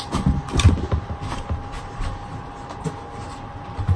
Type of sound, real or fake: real